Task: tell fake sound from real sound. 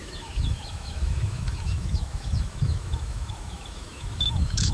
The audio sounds fake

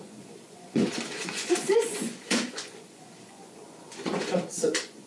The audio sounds fake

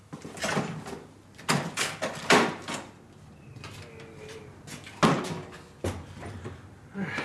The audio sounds real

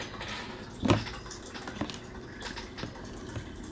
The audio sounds real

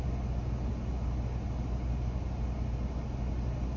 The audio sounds real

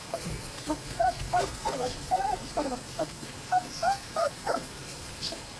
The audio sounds fake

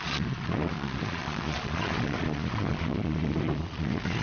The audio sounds fake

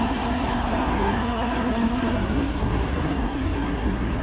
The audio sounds fake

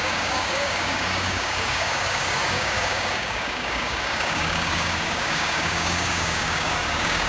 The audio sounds fake